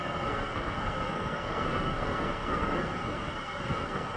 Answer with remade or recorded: remade